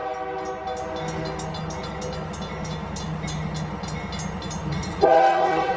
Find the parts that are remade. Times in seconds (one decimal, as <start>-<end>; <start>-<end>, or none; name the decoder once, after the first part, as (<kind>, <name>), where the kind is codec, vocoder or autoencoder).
4.7-5.8 (vocoder, Vocos)